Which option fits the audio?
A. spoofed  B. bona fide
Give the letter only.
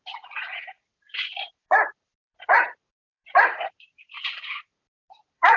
A